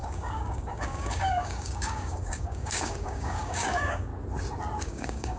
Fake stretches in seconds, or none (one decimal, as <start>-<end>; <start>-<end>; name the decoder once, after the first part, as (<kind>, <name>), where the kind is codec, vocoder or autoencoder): 0.0-4.1 (codec, DAC); 4.8-5.4